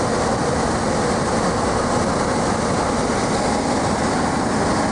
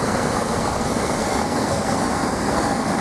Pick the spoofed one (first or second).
second